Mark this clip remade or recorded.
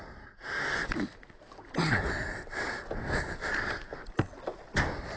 recorded